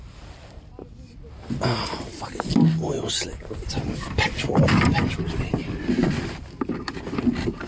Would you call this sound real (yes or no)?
yes